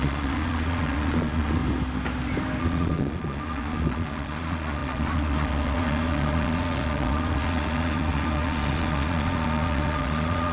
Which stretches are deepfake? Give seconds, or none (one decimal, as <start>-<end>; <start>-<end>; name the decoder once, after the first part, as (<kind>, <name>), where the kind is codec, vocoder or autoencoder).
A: 0.0-1.6 (vocoder, Vocos); 2.6-10.5